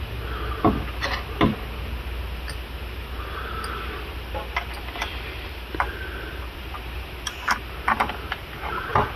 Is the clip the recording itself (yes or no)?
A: yes